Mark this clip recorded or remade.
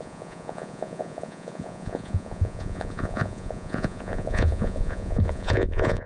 remade